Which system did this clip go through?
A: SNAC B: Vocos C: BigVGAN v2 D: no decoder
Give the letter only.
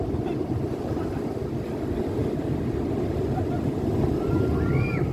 D